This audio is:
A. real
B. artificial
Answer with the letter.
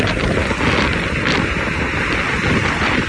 A